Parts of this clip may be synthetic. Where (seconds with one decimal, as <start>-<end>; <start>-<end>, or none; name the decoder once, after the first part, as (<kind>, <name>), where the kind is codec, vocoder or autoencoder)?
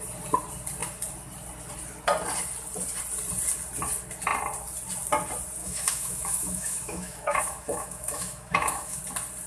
5.6-9.0 (autoencoder, DAC-VAE)